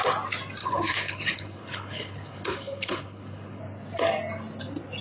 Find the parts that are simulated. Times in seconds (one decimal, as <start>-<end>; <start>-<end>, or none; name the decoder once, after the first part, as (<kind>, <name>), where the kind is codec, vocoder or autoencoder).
0.6-3.6 (codec, HILCodec)

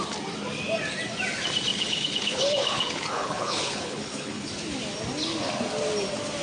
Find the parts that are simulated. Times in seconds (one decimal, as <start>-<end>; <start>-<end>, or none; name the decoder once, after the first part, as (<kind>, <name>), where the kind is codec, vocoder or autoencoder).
1.7-4.5 (codec, HILCodec)

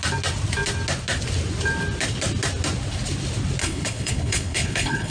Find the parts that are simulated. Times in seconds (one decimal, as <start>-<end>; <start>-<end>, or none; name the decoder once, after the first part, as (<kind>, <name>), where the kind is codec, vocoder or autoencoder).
3.6-5.1 (codec, HILCodec)

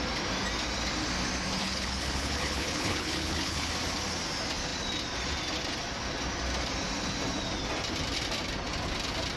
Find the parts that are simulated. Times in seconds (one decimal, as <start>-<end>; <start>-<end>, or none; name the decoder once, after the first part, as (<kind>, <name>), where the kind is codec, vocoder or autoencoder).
1.6-3.7 (codec, HILCodec)

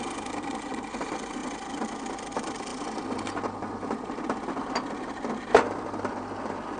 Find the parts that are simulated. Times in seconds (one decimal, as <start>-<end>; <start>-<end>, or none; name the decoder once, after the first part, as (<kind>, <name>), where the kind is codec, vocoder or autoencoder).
none

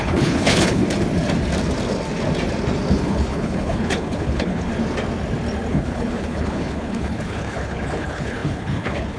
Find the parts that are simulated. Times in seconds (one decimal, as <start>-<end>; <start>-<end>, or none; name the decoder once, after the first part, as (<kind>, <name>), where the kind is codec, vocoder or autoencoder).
0.0-0.8 (codec, HILCodec); 2.9-4.7; 5.7-9.2

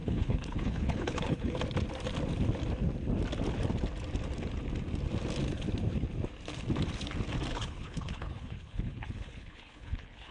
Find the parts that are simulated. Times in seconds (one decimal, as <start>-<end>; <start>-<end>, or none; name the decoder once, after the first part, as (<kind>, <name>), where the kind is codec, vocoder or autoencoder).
0.0-1.6 (codec, HILCodec); 7.5-10.3

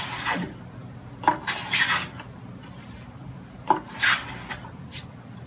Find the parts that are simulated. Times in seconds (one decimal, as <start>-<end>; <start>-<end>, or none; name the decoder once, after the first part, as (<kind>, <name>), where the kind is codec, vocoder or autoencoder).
none